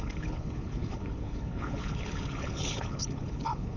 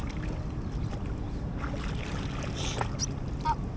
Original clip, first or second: second